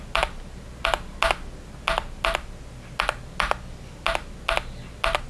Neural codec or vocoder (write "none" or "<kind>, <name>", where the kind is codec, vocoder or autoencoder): none